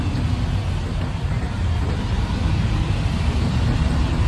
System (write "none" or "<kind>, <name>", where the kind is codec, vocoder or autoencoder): none